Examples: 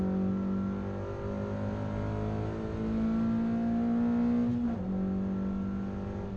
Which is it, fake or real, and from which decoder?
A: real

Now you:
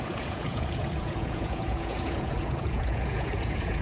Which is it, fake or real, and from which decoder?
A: fake, vocoder, Vocos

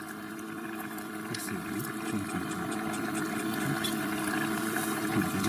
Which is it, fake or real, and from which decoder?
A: fake, vocoder, BigVGAN v2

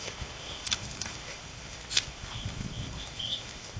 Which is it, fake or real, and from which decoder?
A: fake, codec, ZipCodec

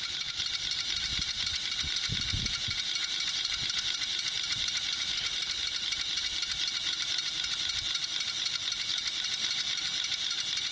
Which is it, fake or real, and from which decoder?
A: real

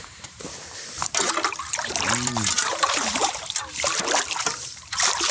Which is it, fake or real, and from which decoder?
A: fake, vocoder, BigVGAN v2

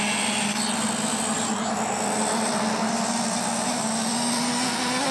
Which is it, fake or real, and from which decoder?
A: real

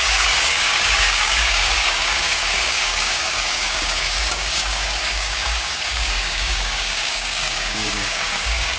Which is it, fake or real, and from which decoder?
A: fake, codec, DAC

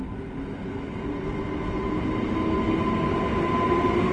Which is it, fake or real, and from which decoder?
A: real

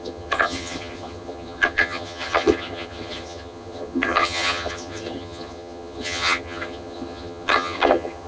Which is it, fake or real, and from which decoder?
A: fake, vocoder, HiFi-GAN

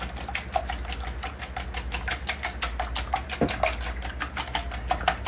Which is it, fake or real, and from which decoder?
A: real